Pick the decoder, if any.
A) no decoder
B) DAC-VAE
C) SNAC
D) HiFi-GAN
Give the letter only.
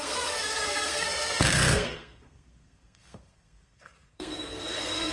C